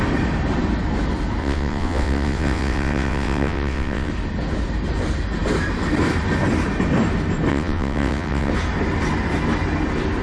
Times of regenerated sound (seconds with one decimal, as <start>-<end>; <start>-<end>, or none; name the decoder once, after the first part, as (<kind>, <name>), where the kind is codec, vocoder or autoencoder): 1.4-4.1 (vocoder, WaveNeXt); 7.5-8.5